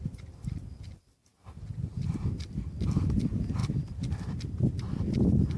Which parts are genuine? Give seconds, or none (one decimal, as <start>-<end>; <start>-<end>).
1.3-3.0; 3.6-5.0

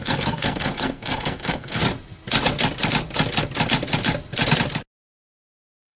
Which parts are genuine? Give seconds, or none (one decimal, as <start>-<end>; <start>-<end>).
1.8-5.1